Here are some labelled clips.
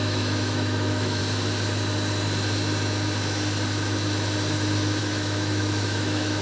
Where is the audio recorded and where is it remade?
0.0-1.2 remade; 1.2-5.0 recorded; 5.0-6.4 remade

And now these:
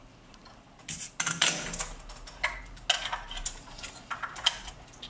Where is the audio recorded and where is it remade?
0.0-5.1 recorded

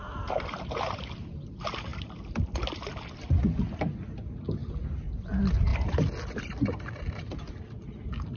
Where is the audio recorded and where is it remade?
0.0-8.4 recorded

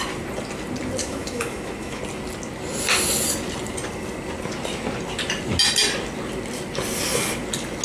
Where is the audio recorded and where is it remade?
0.0-1.0 recorded; 1.0-2.0 remade; 2.0-7.8 recorded

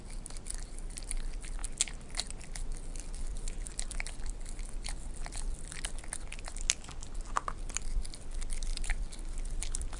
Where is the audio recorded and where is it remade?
0.0-10.0 recorded